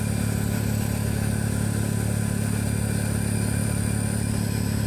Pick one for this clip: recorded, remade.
recorded